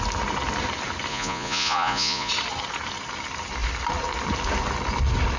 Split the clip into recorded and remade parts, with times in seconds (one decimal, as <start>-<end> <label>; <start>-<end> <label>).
0.0-1.1 recorded; 1.1-2.3 remade; 2.3-5.4 recorded

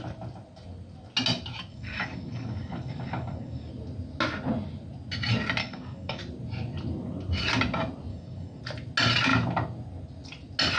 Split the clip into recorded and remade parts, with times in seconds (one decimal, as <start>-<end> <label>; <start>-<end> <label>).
0.0-1.7 recorded; 1.7-3.7 remade; 3.7-5.6 recorded; 5.6-6.2 remade; 6.2-8.1 recorded; 8.1-8.6 remade; 8.6-10.8 recorded

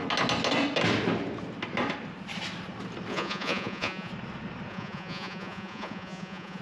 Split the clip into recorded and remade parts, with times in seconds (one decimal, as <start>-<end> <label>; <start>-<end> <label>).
0.0-3.1 recorded; 3.1-4.1 remade; 4.1-4.7 recorded; 4.7-6.6 remade

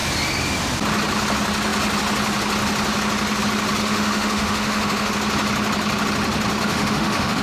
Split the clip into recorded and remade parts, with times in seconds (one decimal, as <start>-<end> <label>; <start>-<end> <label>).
0.0-3.8 recorded; 3.8-5.1 remade; 5.1-6.6 recorded; 6.6-7.4 remade